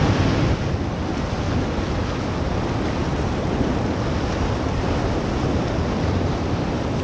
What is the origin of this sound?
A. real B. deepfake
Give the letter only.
A